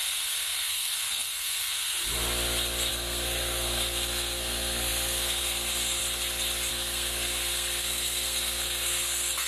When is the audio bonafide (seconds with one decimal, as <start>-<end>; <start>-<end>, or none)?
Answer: 2.0-2.9; 6.0-6.7